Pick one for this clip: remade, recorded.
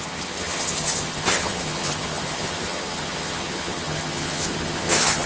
remade